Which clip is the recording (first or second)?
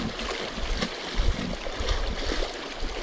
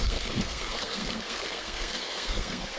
first